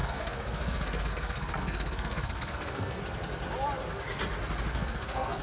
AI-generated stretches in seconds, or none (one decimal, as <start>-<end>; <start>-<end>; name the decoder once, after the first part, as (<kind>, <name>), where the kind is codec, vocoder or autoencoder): 0.0-3.0 (codec, SNAC); 4.7-5.4